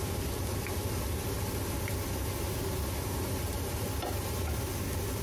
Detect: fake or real real